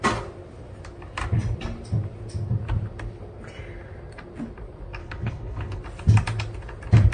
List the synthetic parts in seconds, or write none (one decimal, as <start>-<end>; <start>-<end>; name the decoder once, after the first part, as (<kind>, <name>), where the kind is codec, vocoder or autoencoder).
5.0-5.8 (codec, HILCodec)